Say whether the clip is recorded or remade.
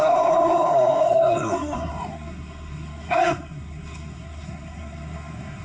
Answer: remade